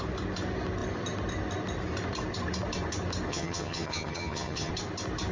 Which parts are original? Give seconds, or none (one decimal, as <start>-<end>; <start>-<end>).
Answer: 0.0-3.3; 4.7-5.3